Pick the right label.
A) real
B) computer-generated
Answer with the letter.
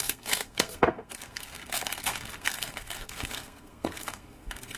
B